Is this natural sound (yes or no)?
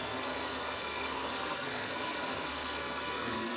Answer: no